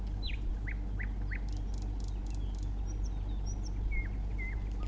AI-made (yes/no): no